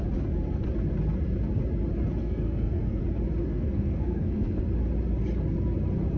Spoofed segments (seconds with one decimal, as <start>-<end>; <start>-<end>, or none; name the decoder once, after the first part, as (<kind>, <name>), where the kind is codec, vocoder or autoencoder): 2.2-3.0 (codec, SNAC); 3.5-4.6